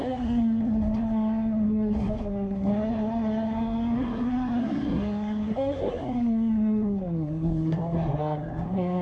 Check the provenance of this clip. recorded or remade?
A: remade